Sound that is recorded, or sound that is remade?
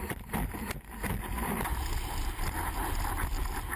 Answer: recorded